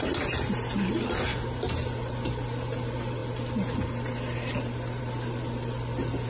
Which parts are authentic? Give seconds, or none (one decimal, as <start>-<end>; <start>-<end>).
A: 0.0-6.3